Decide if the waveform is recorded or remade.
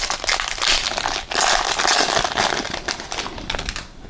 recorded